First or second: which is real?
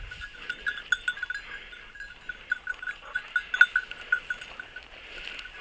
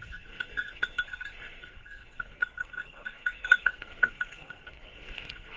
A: first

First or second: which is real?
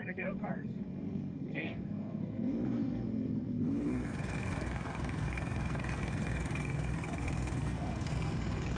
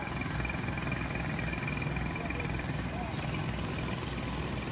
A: second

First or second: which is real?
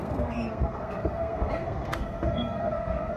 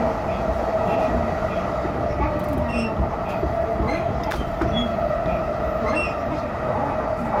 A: second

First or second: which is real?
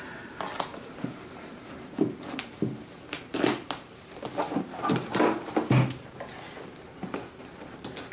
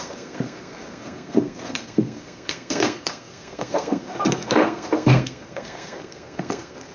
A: first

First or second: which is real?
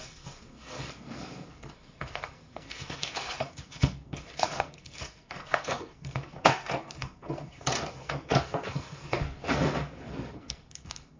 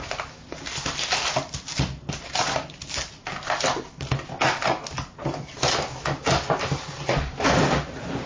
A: second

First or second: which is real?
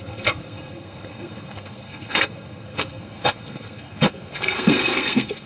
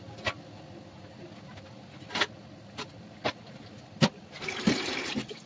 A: second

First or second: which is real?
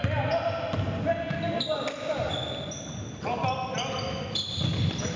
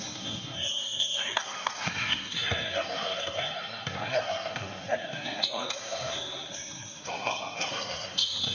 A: first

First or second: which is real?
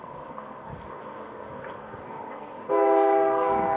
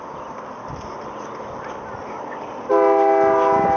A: second